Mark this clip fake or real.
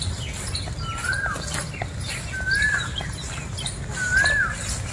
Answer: real